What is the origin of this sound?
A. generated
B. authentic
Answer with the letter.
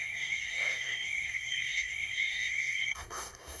A